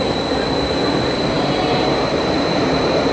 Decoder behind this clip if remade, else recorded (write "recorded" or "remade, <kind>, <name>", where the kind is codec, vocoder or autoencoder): remade, vocoder, BigVGAN v2